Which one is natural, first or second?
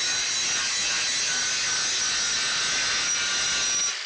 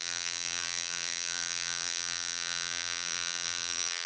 first